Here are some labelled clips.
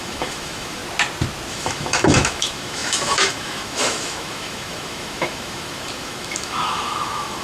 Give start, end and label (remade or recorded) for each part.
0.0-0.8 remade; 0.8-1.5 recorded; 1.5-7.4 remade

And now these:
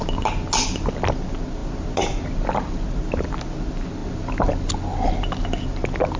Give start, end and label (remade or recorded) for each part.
0.0-6.2 recorded

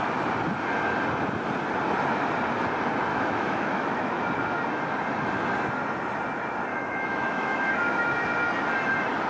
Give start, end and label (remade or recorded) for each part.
0.0-3.1 recorded; 3.1-4.2 remade; 4.2-6.7 recorded; 6.7-8.1 remade; 8.1-9.3 recorded

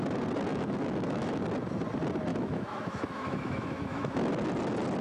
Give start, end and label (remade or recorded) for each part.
0.0-0.5 recorded; 0.5-1.4 remade; 1.4-2.3 recorded; 2.3-4.3 remade; 4.3-5.0 recorded

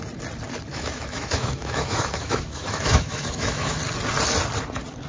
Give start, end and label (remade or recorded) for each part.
0.0-0.7 recorded; 0.7-3.8 remade; 3.8-5.1 recorded

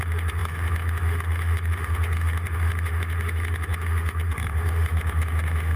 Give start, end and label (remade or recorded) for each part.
0.0-5.8 remade